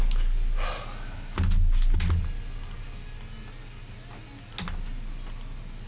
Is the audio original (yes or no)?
yes